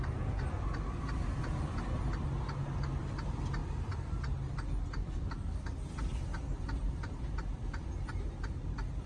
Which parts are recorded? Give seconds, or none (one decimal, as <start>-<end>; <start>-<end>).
0.0-5.0; 5.7-9.1